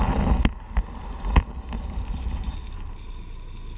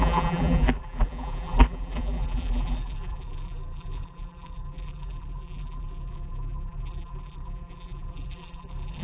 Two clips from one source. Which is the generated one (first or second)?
second